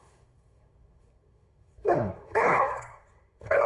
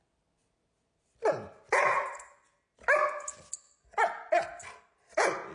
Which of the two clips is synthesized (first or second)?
first